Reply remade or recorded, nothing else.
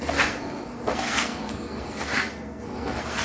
remade